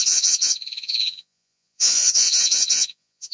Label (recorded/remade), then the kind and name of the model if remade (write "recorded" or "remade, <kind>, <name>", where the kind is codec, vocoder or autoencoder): remade, vocoder, Vocos